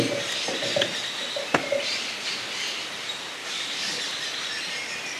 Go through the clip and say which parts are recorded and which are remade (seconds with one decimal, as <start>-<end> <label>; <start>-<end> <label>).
0.0-3.4 recorded; 3.4-4.0 remade; 4.0-5.2 recorded

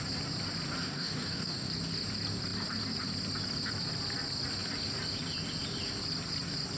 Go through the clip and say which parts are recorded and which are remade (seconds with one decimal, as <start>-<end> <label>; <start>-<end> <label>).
0.0-0.8 recorded; 0.8-1.7 remade; 1.7-6.8 recorded

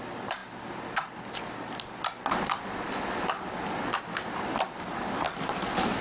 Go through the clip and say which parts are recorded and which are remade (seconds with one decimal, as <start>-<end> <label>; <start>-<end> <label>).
0.0-6.0 recorded

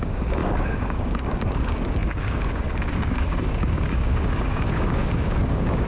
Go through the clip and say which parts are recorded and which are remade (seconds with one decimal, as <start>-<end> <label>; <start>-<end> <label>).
0.0-5.9 remade